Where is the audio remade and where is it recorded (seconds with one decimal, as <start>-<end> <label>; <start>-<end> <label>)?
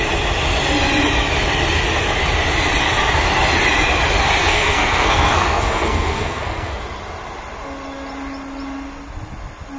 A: 0.0-4.4 recorded; 4.4-6.8 remade; 6.8-9.8 recorded